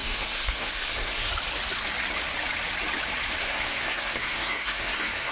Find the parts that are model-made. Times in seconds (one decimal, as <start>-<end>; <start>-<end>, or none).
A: 0.0-1.3; 3.4-5.3